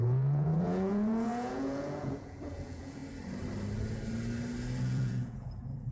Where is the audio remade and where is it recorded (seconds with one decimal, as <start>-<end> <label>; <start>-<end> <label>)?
0.0-3.0 remade; 3.0-4.8 recorded; 4.8-5.9 remade